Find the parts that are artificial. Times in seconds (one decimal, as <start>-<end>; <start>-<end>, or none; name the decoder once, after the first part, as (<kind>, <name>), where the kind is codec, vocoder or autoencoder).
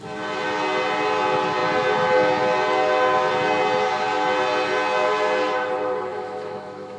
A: 6.1-7.0 (autoencoder, DAC-VAE)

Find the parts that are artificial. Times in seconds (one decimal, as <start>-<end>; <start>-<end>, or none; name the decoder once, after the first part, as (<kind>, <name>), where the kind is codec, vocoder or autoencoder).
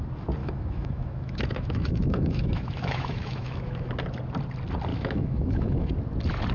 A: 0.4-3.9 (autoencoder, DAC-VAE); 4.9-5.9